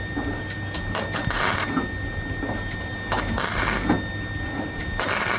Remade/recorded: recorded